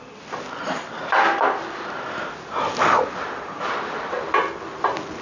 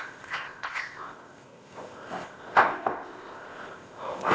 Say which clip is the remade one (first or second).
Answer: second